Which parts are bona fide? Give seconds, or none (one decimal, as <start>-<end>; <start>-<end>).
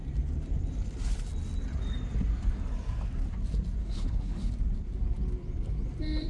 0.0-3.8; 4.5-6.3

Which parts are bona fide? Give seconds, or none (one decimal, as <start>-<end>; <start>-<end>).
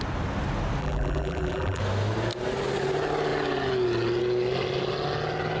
0.0-0.8; 1.8-5.6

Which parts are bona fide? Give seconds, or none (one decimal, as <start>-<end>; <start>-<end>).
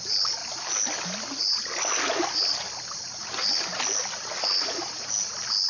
0.0-5.7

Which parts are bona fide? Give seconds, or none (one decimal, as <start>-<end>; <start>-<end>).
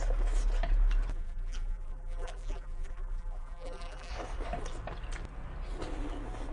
0.0-1.1; 4.1-6.5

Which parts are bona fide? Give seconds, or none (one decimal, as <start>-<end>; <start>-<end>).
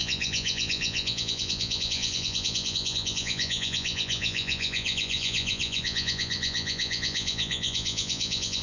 none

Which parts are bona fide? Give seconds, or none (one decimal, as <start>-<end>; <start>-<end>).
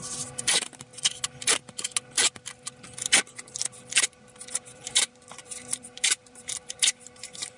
0.9-4.5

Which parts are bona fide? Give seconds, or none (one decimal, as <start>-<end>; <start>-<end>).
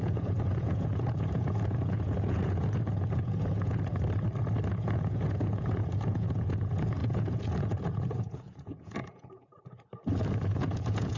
3.9-4.7; 9.5-10.2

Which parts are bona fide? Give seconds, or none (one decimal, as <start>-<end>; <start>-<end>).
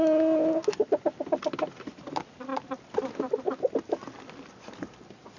0.0-5.4